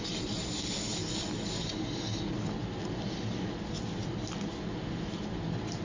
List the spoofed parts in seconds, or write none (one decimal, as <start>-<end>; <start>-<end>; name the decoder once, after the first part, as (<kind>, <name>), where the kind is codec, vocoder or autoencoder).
none